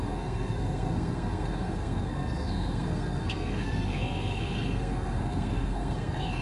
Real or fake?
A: fake